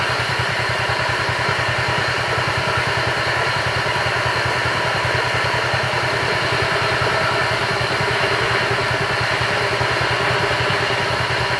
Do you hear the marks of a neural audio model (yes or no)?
no